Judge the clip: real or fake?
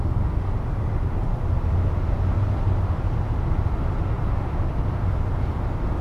real